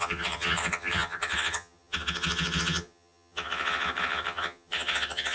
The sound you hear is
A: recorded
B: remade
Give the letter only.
B